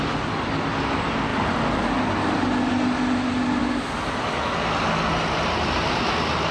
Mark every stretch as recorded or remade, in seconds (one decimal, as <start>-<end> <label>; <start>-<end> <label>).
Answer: 0.0-6.5 recorded